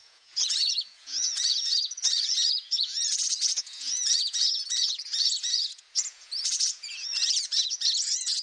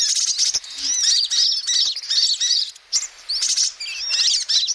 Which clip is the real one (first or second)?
second